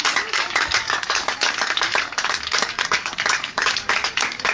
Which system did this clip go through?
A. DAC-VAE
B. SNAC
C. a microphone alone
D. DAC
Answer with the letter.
D